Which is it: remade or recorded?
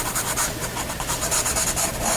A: recorded